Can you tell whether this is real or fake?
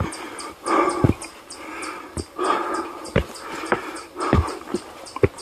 real